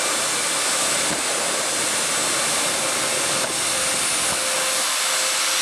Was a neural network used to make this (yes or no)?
no